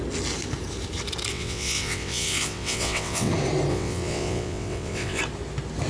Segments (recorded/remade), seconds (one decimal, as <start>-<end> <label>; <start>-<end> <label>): 0.0-1.3 recorded; 1.3-3.3 remade; 3.3-3.7 recorded; 3.7-5.2 remade; 5.2-5.9 recorded